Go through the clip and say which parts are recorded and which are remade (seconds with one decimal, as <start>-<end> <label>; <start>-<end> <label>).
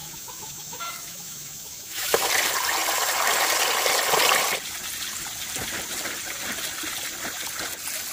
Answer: 0.0-2.3 remade; 2.3-8.1 recorded